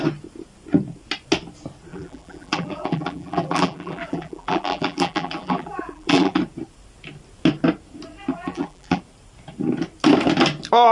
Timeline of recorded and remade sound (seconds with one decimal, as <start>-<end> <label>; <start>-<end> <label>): 0.0-1.9 recorded; 1.9-6.4 remade; 6.4-8.3 recorded; 8.3-9.0 remade; 9.0-10.9 recorded